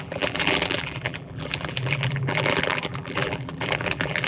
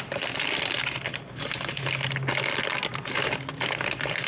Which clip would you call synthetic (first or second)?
first